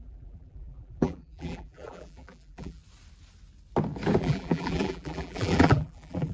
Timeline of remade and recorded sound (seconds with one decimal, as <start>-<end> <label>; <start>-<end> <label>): 0.0-2.8 remade; 2.8-4.2 recorded; 4.2-6.3 remade